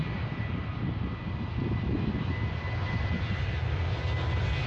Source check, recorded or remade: recorded